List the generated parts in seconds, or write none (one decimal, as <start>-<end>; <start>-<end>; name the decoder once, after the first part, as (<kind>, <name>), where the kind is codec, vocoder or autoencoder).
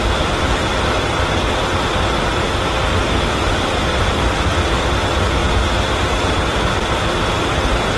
0.0-5.4 (vocoder, BigVGAN v2); 7.4-8.0